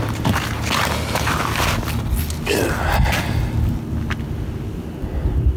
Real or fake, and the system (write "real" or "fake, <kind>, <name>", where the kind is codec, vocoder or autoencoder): real